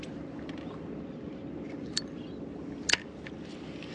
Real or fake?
real